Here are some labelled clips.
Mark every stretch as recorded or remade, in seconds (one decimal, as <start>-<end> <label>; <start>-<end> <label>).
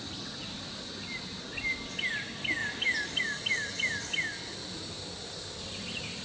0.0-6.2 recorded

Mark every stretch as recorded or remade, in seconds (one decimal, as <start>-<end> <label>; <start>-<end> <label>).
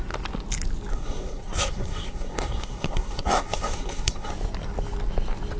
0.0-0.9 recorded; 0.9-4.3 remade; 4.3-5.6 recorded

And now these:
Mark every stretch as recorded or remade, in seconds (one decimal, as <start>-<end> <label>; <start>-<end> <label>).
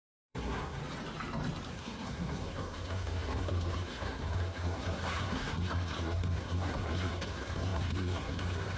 0.0-0.8 remade; 0.8-1.7 recorded; 1.7-8.8 remade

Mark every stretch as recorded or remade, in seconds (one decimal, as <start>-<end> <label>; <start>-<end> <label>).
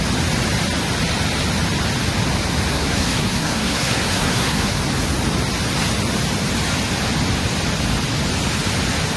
0.0-2.7 recorded; 2.7-4.8 remade; 4.8-9.2 recorded